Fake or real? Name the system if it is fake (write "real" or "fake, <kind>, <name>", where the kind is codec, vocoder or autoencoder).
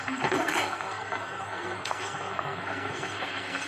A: fake, codec, SNAC